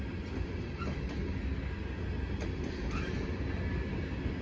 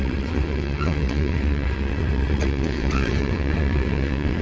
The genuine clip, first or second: first